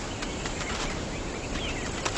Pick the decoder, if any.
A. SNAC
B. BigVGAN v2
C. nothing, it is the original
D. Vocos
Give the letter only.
C